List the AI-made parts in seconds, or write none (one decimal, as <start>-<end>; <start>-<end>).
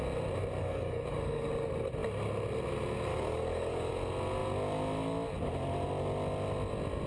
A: 0.6-1.5; 3.1-3.9